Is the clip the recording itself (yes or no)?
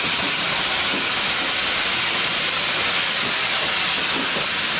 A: yes